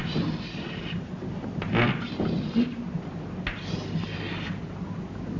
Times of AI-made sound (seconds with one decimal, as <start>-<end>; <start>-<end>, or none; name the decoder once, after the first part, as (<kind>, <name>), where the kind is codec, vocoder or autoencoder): none